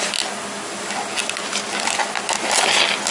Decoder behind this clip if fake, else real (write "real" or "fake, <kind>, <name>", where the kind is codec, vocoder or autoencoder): real